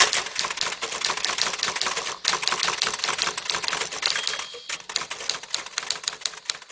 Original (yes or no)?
yes